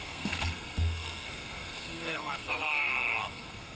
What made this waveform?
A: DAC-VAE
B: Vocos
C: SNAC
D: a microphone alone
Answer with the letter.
C